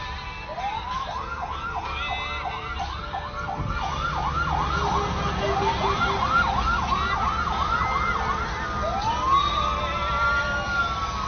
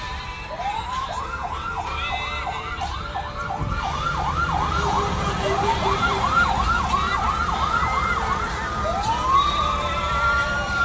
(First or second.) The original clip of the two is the first